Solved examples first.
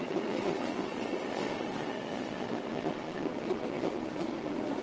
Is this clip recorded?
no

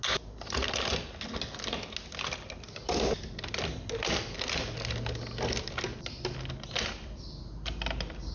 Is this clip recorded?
yes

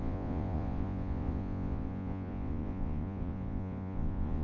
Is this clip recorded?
no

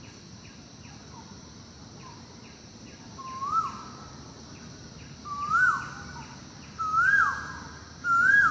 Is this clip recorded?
yes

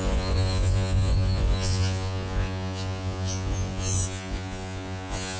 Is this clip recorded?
no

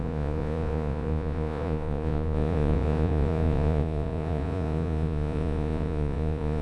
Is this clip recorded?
no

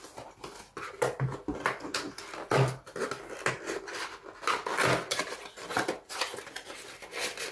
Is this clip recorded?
yes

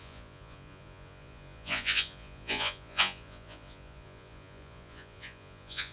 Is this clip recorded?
no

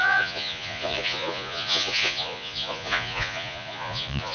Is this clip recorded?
no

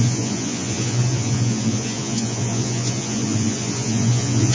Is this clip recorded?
no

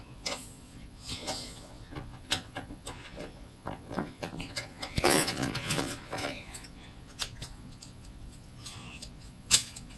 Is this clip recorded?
no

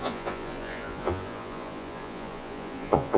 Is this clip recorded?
no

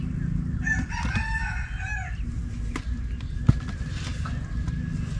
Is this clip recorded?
yes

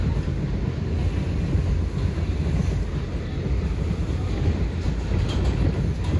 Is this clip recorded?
yes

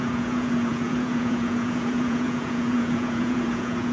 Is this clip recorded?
no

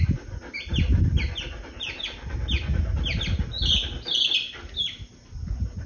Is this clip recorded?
yes